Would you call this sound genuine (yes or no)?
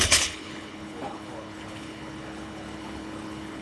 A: no